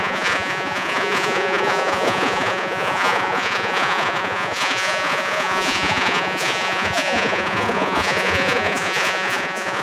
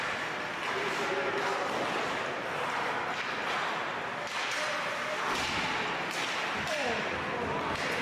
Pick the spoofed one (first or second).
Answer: first